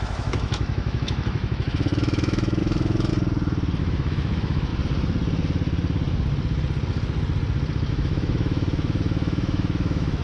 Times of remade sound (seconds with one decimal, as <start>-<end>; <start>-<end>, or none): 0.0-3.1; 3.8-4.7; 7.9-10.2